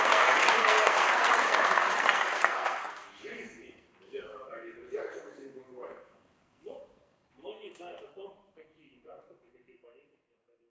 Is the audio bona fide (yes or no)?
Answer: no